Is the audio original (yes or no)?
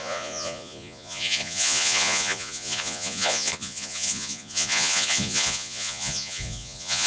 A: no